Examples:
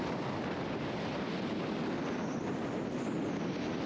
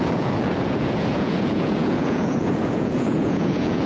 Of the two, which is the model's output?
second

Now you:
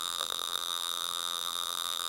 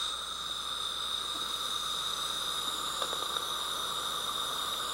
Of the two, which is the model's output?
first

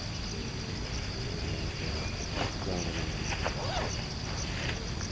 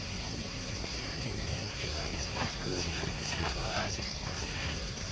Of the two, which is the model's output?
second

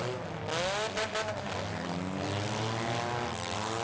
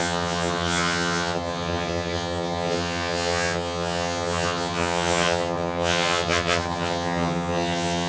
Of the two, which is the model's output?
second